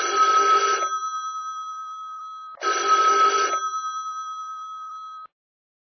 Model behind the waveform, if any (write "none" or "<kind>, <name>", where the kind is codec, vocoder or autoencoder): none